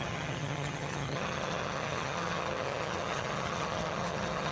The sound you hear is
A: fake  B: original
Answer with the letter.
A